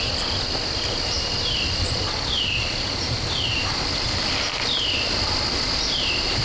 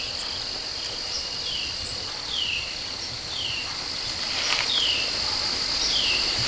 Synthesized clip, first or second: first